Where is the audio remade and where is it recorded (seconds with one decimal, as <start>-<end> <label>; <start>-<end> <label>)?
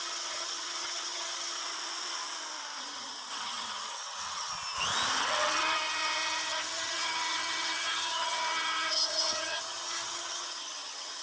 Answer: 0.0-1.6 remade; 1.6-2.8 recorded; 2.8-4.5 remade; 4.5-5.2 recorded; 5.2-11.2 remade